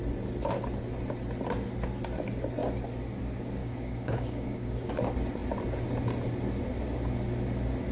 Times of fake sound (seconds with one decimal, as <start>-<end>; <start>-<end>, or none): 3.6-4.9